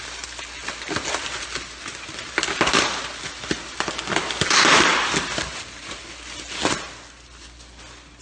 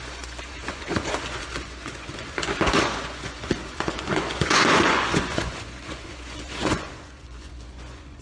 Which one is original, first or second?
first